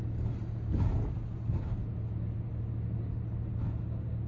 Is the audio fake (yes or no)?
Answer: no